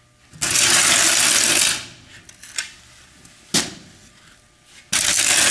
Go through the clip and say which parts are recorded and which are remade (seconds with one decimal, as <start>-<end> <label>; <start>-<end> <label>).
0.0-5.5 recorded